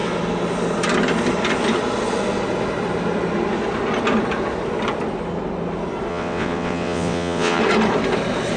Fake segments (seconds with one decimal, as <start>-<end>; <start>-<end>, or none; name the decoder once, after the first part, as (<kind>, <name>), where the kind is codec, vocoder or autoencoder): 6.1-7.6 (vocoder, WaveNeXt)